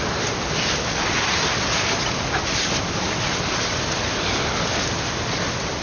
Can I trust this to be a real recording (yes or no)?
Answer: yes